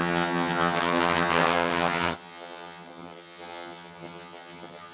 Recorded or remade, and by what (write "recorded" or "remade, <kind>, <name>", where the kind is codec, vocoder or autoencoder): remade, vocoder, HiFi-GAN